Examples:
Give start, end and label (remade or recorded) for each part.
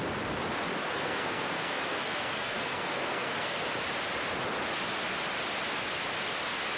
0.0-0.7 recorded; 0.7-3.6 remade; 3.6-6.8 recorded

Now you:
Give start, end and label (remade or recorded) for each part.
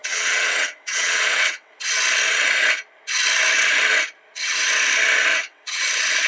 0.0-1.8 remade; 1.8-5.3 recorded; 5.3-5.8 remade; 5.8-6.3 recorded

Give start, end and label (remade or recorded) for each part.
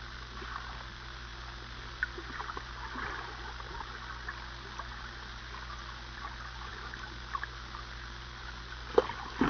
0.0-9.5 recorded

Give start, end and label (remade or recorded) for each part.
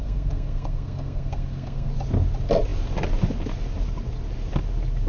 0.0-1.9 remade; 1.9-5.1 recorded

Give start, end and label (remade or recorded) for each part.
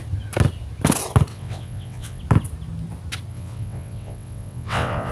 0.0-1.3 recorded; 1.3-2.2 remade; 2.2-3.3 recorded; 3.3-5.1 remade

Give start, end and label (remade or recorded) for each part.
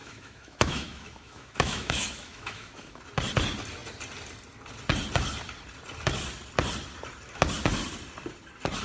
0.0-3.0 remade; 3.0-8.8 recorded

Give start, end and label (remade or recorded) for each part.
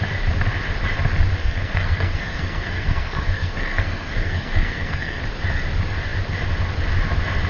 0.0-1.4 recorded; 1.4-5.2 remade; 5.2-7.5 recorded